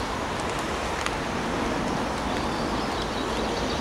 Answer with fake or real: real